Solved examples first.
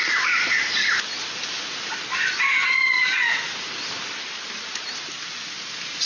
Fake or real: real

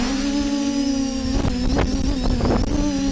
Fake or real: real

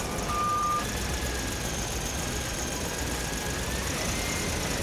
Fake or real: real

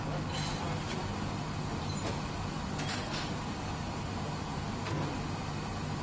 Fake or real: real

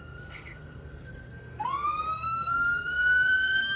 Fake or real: fake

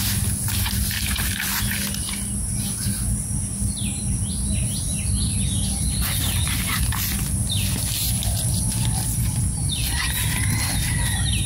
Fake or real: real